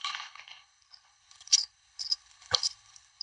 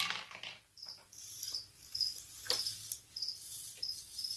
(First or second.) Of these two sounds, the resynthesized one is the first